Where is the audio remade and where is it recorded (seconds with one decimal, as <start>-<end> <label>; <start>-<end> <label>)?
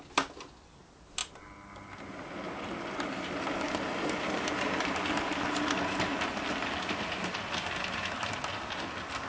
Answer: 0.0-9.3 recorded